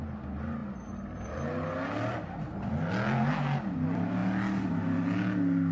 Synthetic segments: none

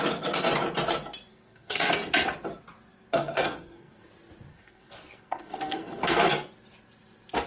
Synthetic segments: 1.3-1.9 (codec, SNAC); 3.2-4.1; 4.5-6.5

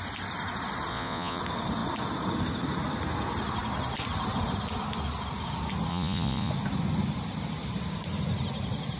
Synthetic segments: 0.9-1.4 (vocoder, Vocos); 5.9-6.5

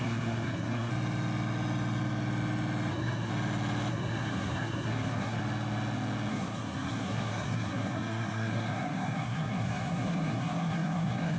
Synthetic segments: 0.0-0.9 (codec, SNAC); 2.9-3.3; 3.9-5.4; 6.3-11.4

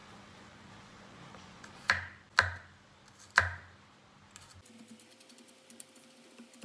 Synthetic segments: 0.0-1.9 (vocoder, Vocos)

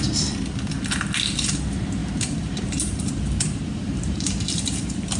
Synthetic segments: 2.0-5.2 (vocoder, BigVGAN v2)